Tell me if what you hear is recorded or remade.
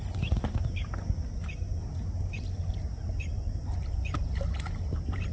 recorded